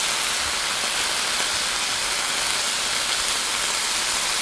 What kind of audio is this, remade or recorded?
recorded